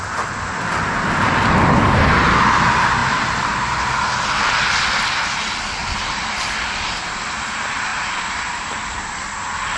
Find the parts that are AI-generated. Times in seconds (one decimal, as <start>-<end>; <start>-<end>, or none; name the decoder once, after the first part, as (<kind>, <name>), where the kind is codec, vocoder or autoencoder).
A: 3.0-3.9 (vocoder, BigVGAN v2); 5.8-6.5; 7.9-9.1